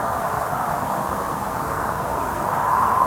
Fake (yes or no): yes